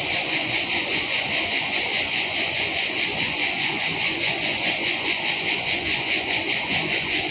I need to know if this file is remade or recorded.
remade